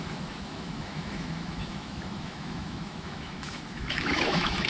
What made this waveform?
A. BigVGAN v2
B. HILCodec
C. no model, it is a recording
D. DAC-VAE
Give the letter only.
D